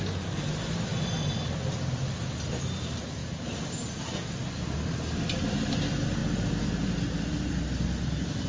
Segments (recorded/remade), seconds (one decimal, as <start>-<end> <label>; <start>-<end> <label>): 0.0-0.9 recorded; 0.9-2.4 remade; 2.4-8.5 recorded